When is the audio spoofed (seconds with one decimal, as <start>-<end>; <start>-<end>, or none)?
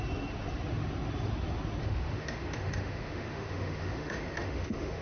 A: 1.8-5.0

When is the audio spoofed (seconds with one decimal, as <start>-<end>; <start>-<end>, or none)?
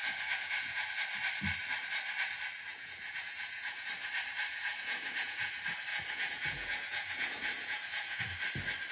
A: 0.0-0.9; 2.7-3.9; 4.5-5.5; 5.9-8.2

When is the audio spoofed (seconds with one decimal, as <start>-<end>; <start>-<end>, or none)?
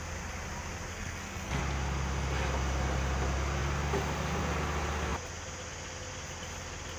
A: 0.9-1.6